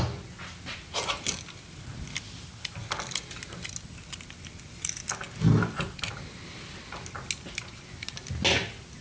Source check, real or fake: real